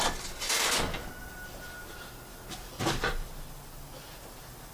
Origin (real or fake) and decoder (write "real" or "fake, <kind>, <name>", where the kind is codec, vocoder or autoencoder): real